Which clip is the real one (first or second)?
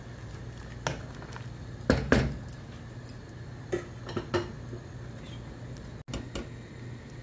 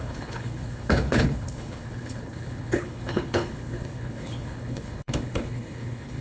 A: first